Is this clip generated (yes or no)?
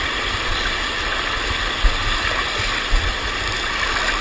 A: no